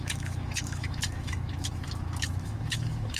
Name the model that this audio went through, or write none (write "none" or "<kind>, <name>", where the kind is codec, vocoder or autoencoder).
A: autoencoder, DAC-VAE